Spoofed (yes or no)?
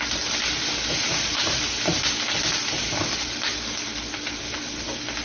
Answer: no